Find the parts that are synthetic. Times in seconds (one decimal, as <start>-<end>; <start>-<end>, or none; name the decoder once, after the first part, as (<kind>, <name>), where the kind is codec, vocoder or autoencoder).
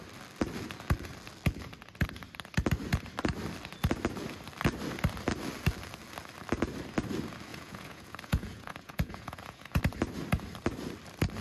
7.5-9.8 (vocoder, Vocos)